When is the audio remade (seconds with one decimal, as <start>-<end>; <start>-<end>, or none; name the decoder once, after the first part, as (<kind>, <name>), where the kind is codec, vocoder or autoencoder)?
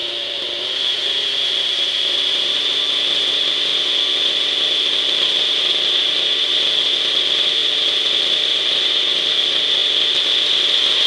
1.5-3.7 (vocoder, BigVGAN v2); 4.8-9.8